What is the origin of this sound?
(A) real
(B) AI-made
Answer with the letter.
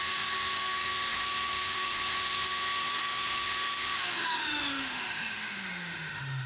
B